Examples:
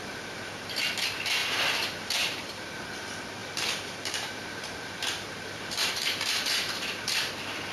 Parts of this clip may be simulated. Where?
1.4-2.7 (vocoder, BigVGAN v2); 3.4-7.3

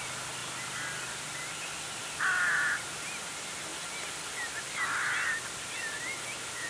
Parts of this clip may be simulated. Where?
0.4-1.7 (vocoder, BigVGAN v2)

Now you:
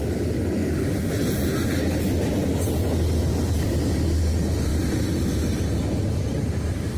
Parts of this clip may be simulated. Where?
none

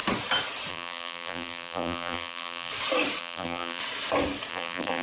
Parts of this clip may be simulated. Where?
0.7-2.7 (vocoder, BigVGAN v2); 3.2-3.8; 4.5-5.0

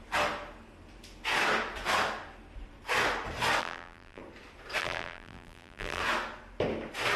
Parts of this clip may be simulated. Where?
3.6-4.2 (vocoder, BigVGAN v2); 4.8-6.0